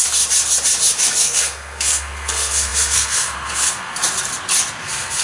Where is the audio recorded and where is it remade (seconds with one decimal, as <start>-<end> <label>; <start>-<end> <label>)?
0.0-1.2 recorded; 1.2-4.0 remade; 4.0-4.8 recorded; 4.8-5.2 remade